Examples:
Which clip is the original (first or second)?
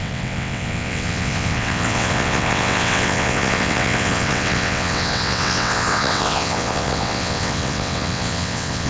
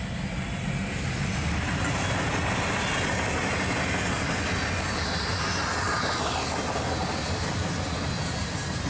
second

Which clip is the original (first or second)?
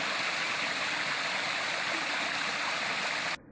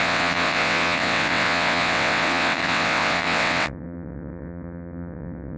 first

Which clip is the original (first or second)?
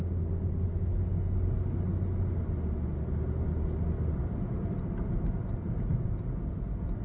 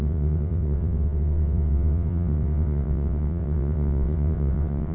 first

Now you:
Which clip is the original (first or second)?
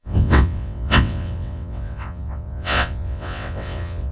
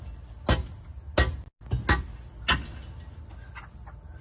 second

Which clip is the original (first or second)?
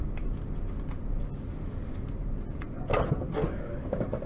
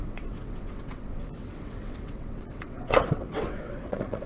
first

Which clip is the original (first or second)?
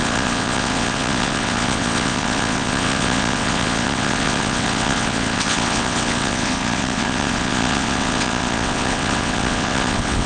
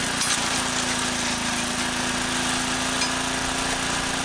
second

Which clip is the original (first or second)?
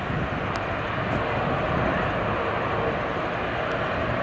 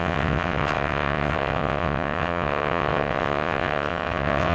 first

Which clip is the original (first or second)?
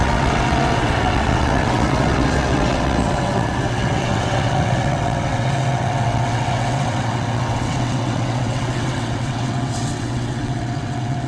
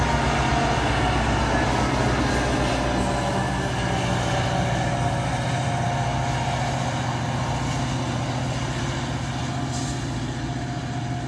second